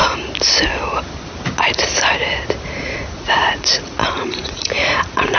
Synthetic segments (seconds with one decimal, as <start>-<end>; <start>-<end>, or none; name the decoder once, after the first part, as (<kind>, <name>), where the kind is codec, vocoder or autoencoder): 2.6-5.4 (vocoder, Vocos)